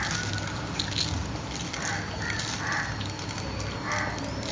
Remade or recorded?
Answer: recorded